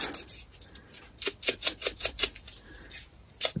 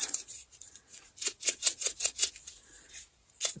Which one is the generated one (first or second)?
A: second